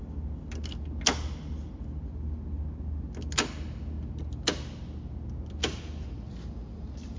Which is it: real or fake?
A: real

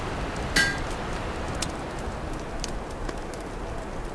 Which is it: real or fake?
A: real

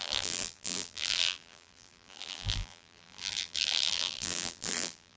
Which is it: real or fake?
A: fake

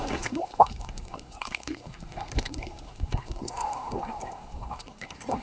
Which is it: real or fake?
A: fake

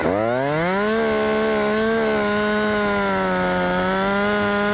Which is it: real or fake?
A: real